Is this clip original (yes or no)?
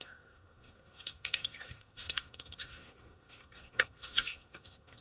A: no